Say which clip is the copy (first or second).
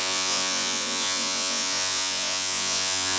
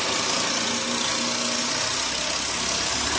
first